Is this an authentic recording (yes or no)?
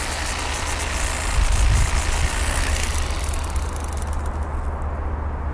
yes